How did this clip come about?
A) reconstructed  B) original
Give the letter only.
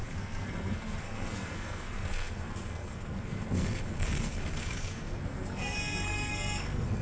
A